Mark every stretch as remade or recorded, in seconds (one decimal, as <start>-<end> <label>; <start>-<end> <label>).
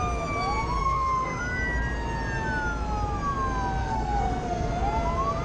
0.0-0.8 recorded; 0.8-1.4 remade; 1.4-3.8 recorded; 3.8-4.7 remade; 4.7-5.4 recorded